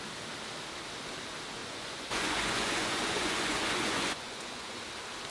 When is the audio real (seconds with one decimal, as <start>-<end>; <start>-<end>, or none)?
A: 0.0-1.6; 4.8-5.3